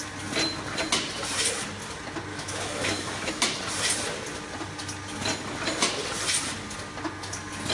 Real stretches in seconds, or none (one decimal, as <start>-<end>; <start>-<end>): 0.0-2.3; 3.3-7.7